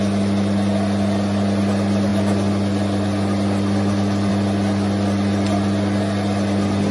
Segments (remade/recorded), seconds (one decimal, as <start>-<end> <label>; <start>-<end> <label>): 0.0-6.9 recorded